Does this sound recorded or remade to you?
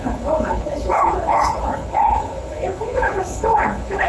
remade